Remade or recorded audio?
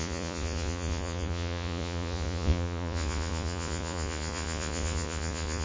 remade